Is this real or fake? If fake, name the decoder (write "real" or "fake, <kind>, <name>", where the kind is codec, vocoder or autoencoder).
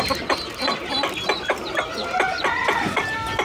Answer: real